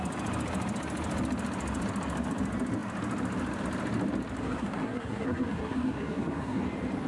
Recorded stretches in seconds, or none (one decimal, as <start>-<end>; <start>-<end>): 0.0-4.4; 6.6-7.1